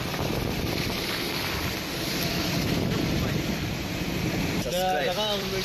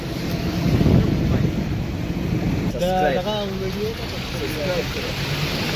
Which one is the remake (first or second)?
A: first